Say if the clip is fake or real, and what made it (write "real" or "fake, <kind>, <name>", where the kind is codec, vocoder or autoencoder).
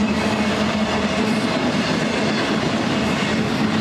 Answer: fake, vocoder, BigVGAN v2